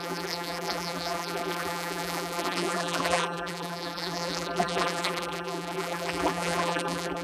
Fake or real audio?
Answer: fake